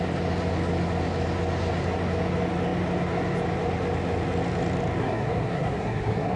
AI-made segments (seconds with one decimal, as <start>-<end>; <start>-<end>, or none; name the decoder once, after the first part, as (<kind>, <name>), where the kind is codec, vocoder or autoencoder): 5.0-6.4 (codec, SNAC)